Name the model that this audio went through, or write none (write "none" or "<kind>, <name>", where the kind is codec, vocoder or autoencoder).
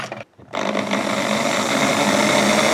none